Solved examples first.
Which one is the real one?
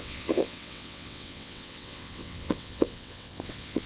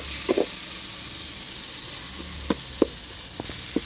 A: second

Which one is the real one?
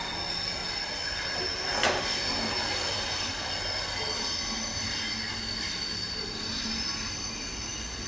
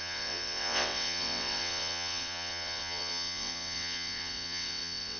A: first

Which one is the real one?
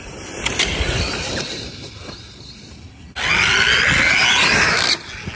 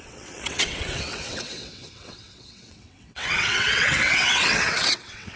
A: first